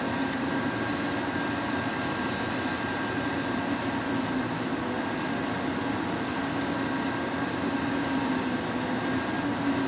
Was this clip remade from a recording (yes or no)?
no